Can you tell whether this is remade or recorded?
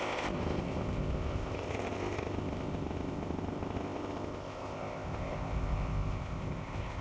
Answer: remade